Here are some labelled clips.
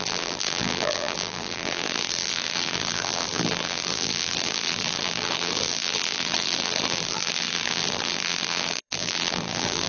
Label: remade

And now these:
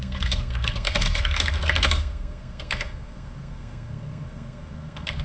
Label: remade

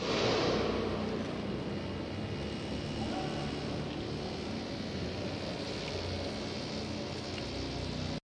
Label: recorded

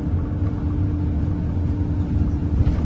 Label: recorded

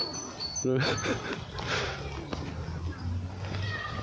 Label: recorded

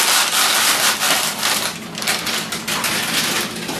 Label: recorded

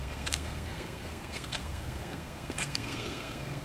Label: remade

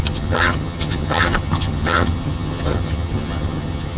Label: remade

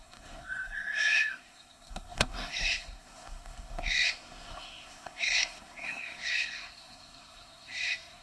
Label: remade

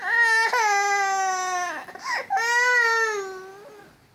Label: recorded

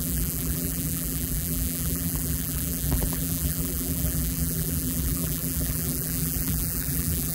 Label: remade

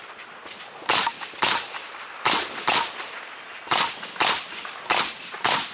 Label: recorded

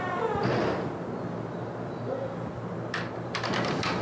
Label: recorded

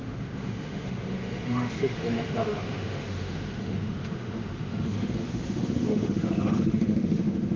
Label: remade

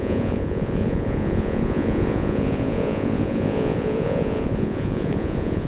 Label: remade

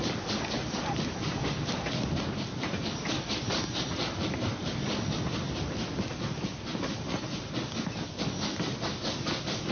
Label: recorded